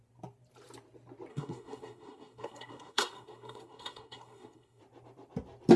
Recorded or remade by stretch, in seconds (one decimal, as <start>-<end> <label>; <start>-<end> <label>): 0.0-1.3 recorded; 1.3-4.8 remade; 4.8-5.8 recorded